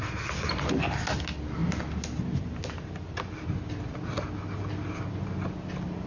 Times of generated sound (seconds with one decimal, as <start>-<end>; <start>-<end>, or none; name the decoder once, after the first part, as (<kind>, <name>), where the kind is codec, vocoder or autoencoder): none